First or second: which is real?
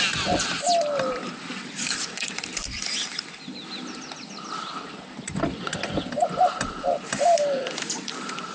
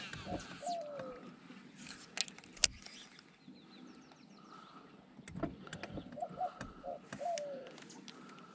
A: second